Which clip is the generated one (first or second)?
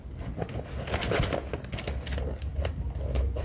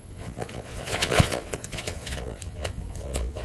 second